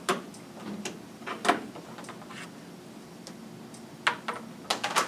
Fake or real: real